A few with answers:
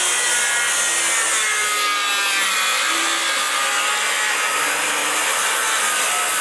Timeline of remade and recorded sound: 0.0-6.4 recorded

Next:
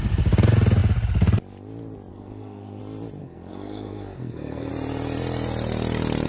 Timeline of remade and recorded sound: 0.0-2.1 recorded; 2.1-2.8 remade; 2.8-3.2 recorded; 3.2-4.7 remade; 4.7-6.3 recorded

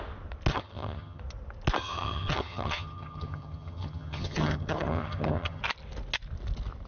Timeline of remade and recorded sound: 0.0-0.5 recorded; 0.5-1.2 remade; 1.2-1.8 recorded; 1.8-5.6 remade; 5.6-6.9 recorded

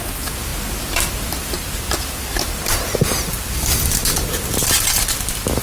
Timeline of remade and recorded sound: 0.0-5.6 recorded

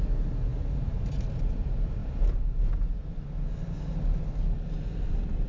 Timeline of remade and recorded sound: 0.0-5.5 recorded